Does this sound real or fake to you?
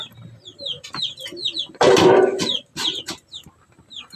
real